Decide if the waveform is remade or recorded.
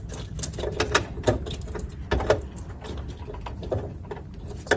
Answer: recorded